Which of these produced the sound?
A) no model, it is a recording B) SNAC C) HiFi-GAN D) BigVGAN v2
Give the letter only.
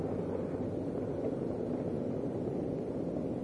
A